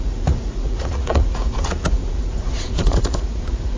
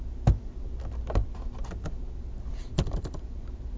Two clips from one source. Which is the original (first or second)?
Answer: second